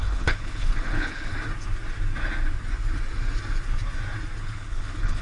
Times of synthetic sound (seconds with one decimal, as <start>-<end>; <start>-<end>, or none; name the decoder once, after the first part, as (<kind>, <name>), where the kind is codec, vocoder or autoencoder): 0.0-1.3 (codec, HILCodec); 4.4-5.2